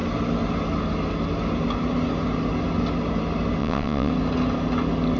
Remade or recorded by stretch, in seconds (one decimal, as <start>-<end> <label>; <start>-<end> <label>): 0.0-3.6 recorded; 3.6-4.1 remade; 4.1-5.2 recorded